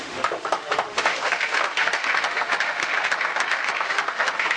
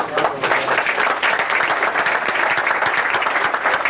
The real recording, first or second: second